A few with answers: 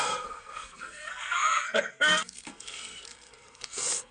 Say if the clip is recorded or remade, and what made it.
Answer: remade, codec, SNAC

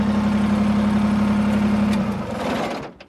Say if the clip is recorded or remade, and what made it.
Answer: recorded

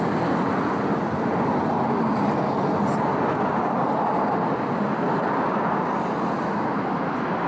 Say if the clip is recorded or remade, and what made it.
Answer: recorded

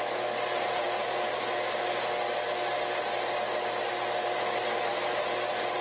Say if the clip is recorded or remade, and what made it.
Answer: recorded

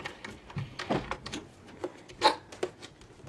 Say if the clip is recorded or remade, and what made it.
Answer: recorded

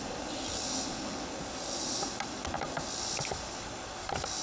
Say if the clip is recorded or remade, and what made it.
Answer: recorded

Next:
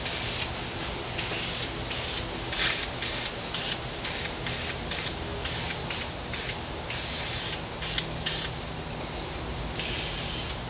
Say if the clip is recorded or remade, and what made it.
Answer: recorded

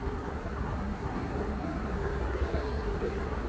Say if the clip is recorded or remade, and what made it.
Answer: remade, codec, SNAC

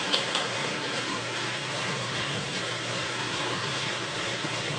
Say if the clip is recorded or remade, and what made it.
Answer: remade, codec, SNAC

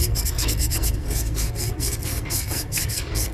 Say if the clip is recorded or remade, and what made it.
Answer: remade, codec, SNAC